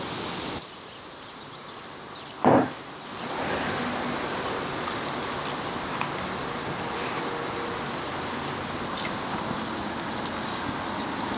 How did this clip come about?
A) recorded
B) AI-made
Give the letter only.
A